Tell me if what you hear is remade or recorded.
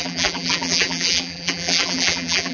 remade